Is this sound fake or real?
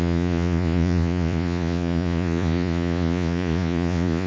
fake